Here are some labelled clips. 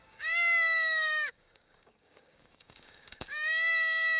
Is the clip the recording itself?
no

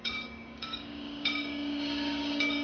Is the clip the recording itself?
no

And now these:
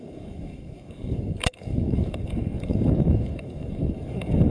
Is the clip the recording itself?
no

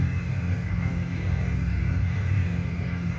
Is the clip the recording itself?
no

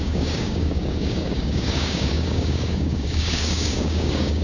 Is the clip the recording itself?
no